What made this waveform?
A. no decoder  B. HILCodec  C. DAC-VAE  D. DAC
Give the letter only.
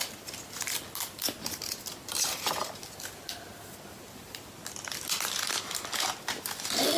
A